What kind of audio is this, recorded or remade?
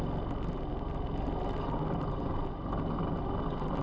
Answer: recorded